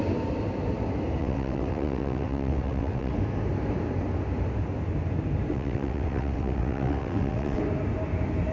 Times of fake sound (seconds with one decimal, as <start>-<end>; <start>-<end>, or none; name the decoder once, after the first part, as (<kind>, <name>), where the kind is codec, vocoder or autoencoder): 1.2-3.1 (vocoder, WaveNeXt); 5.5-7.6